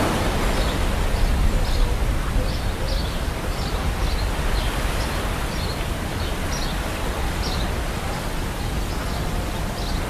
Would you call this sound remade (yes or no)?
no